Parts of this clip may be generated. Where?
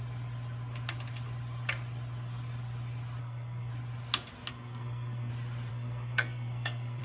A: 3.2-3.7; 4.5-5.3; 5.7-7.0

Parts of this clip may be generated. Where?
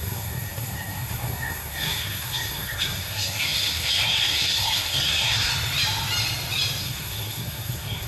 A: 0.0-5.5; 6.8-8.1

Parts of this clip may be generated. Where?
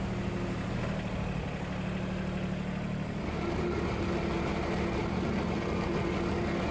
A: none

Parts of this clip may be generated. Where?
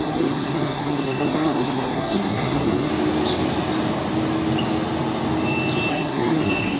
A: 0.0-2.9; 5.9-6.8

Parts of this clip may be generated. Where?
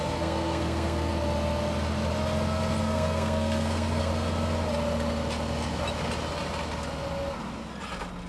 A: 0.0-1.1; 2.8-4.1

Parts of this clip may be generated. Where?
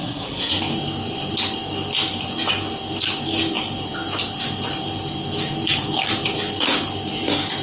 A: 0.0-0.6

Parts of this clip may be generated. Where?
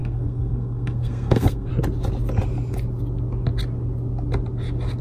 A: 0.0-1.7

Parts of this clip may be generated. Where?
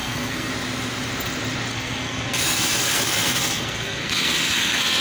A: 0.0-0.5; 1.7-5.0